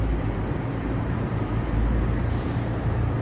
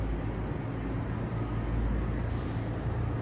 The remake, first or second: first